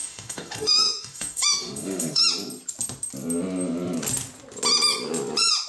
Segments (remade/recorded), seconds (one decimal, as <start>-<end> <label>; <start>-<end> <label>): 0.0-2.2 remade; 2.2-5.7 recorded